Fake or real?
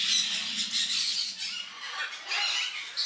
real